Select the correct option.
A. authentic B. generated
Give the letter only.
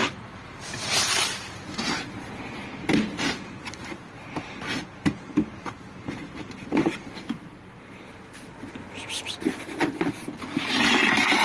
B